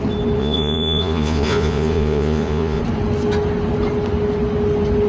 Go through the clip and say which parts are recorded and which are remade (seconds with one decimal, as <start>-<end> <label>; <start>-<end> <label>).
0.0-0.4 recorded; 0.4-2.8 remade; 2.8-5.1 recorded